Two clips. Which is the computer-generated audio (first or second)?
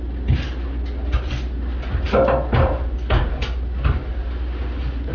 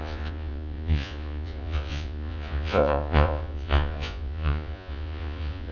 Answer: second